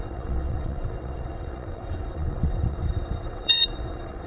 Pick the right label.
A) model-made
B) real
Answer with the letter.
A